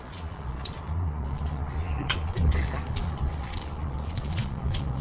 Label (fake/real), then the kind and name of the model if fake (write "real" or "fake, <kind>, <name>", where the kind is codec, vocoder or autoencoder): fake, vocoder, Vocos